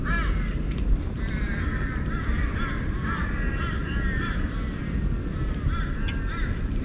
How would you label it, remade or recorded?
remade